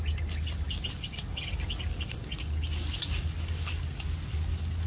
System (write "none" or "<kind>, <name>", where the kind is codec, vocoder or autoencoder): none